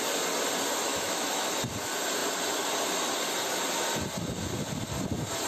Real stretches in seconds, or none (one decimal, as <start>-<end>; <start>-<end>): 0.0-0.9; 1.5-5.5